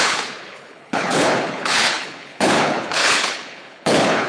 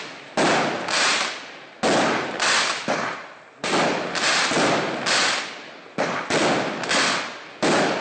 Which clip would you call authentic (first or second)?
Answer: second